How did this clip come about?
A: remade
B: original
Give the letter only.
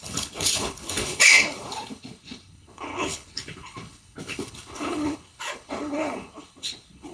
A